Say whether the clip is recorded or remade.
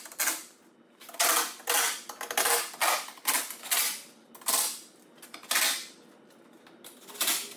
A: recorded